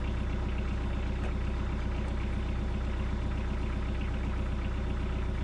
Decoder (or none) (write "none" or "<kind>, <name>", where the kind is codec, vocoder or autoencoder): none